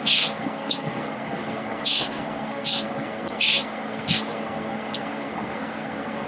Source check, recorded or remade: remade